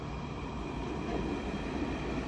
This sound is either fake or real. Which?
real